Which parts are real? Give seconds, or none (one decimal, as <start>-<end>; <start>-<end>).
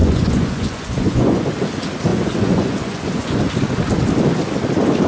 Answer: 1.5-2.1; 3.4-5.1